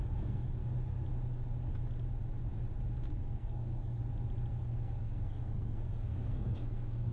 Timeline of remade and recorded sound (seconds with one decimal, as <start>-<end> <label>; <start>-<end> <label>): 0.0-0.6 remade; 0.6-3.1 recorded; 3.1-4.0 remade; 4.0-4.5 recorded; 4.5-7.1 remade